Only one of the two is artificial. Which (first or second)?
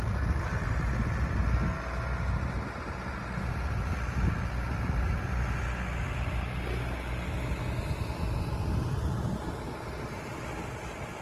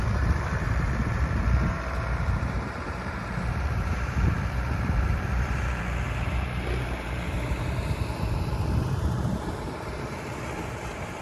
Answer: second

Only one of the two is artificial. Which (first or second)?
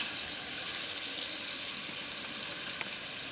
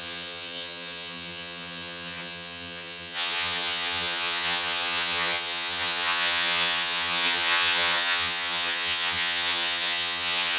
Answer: second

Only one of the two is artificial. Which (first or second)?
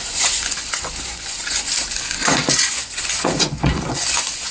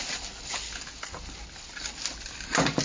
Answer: first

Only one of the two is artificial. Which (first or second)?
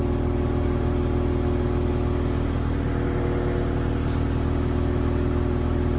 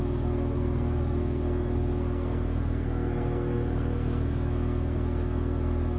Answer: second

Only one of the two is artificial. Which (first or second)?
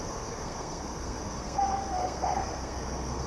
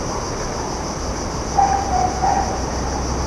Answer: first